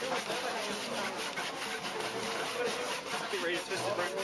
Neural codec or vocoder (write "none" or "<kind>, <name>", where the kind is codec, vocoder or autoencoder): none